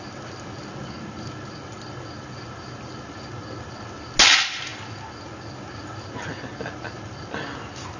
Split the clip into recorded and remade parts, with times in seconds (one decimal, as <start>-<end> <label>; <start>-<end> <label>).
0.0-8.0 recorded